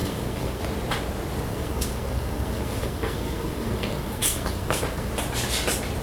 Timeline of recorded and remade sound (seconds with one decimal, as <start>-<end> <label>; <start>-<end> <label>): 0.0-0.6 remade; 0.6-1.5 recorded; 1.5-5.1 remade; 5.1-6.0 recorded